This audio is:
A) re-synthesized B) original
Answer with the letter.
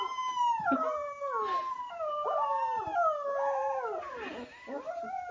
B